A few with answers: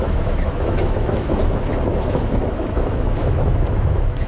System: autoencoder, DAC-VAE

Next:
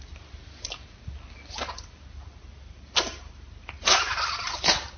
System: none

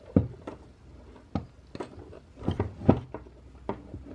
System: none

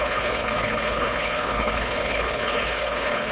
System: codec, HILCodec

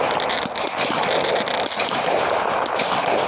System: none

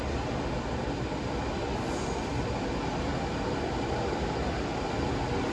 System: none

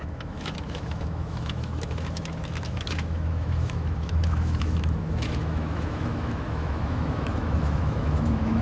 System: autoencoder, DAC-VAE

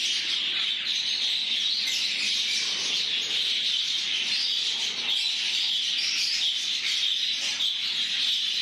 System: none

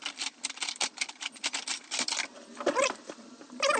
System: vocoder, BigVGAN v2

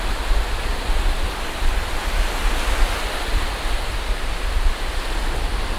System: none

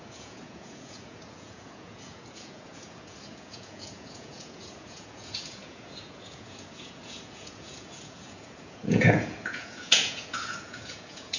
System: vocoder, Vocos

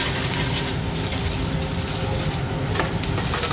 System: none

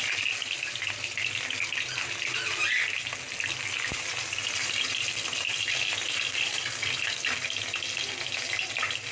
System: none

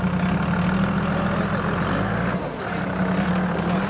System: none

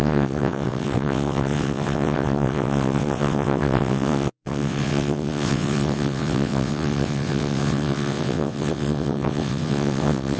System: vocoder, WaveNeXt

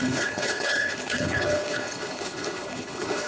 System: codec, HILCodec